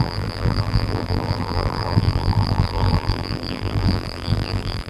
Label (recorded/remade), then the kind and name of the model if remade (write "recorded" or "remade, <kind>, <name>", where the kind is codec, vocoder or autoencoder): remade, vocoder, BigVGAN v2